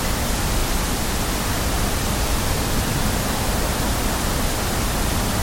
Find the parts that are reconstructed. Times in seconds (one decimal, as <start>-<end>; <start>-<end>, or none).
none